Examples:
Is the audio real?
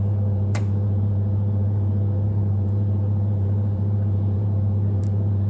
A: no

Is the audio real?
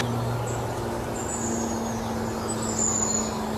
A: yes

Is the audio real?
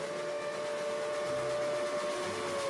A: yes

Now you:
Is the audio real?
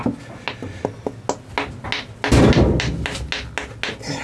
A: yes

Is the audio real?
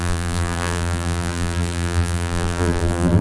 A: no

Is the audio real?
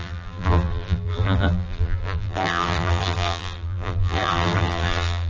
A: no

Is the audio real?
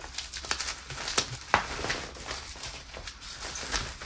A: yes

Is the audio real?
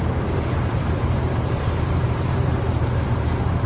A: no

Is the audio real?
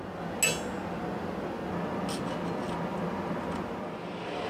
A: yes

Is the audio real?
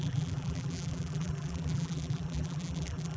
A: no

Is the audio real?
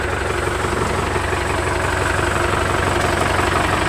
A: yes